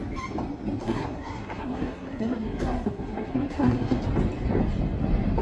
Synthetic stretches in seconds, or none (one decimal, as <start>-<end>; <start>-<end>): 0.8-4.0